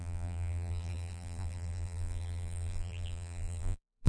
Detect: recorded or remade remade